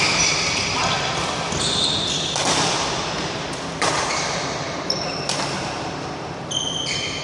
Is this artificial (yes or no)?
no